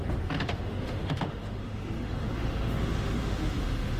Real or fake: fake